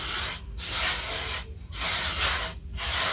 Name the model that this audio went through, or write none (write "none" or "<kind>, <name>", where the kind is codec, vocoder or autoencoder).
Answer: none